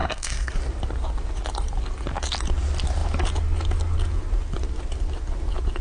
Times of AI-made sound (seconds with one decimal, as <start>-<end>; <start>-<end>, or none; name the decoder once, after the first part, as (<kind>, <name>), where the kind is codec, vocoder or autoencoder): 0.0-0.5 (codec, SNAC)